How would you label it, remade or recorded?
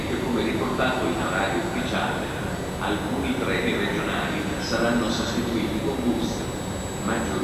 recorded